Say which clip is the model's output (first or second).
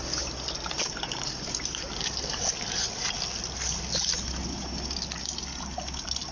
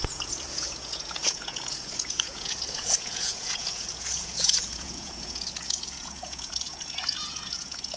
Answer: second